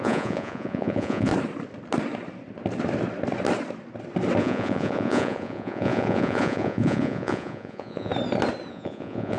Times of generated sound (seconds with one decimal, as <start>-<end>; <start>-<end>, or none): 0.0-1.3; 4.4-8.1; 8.7-9.4